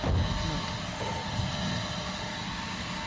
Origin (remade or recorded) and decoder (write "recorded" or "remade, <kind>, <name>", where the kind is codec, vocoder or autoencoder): recorded